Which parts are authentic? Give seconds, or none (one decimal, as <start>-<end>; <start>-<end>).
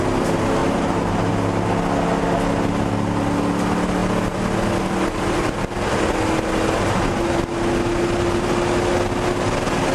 0.0-0.6; 1.3-9.9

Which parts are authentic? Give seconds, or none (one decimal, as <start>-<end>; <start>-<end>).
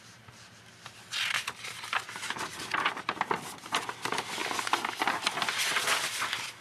0.0-6.6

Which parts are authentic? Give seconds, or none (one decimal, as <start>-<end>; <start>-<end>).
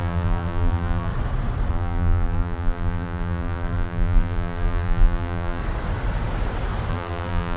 1.1-1.7; 5.6-6.9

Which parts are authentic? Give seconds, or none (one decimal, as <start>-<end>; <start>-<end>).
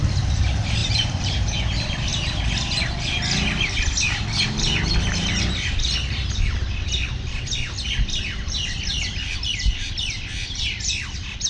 0.0-0.8; 1.6-11.5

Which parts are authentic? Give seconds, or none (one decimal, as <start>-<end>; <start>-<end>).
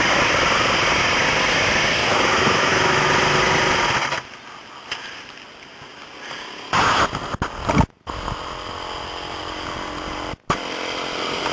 0.0-2.0; 3.1-11.5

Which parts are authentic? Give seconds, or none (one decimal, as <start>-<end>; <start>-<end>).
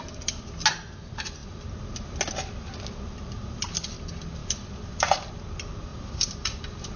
0.0-4.4; 5.3-5.9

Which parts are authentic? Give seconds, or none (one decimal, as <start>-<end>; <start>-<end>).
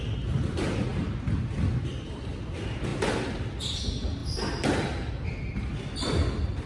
0.0-6.7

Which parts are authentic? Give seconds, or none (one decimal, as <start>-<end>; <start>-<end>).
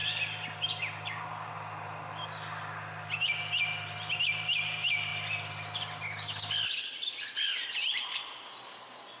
0.0-9.2